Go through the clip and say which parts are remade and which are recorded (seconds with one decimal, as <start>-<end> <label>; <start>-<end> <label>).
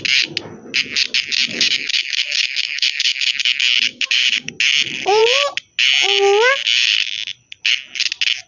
0.0-1.5 recorded; 1.5-3.3 remade; 3.3-3.9 recorded; 3.9-4.5 remade; 4.5-8.5 recorded